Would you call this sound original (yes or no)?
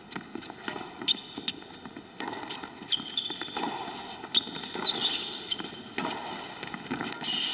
yes